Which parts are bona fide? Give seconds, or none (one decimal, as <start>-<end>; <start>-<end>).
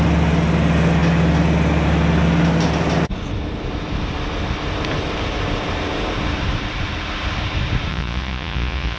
0.0-7.9